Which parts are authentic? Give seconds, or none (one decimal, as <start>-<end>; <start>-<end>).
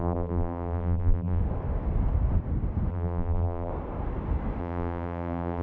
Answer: 1.4-2.9; 3.7-4.6